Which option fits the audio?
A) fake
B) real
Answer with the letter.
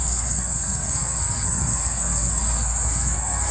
A